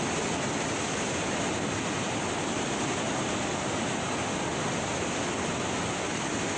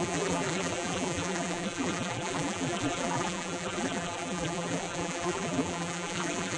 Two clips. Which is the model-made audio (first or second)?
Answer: second